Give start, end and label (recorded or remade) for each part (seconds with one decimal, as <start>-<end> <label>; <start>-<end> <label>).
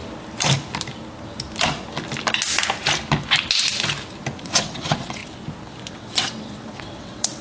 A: 0.0-4.4 recorded; 4.4-5.2 remade; 5.2-5.9 recorded; 5.9-7.4 remade